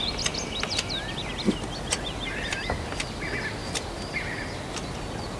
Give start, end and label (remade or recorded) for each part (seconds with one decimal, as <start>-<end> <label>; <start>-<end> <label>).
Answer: 0.0-5.4 recorded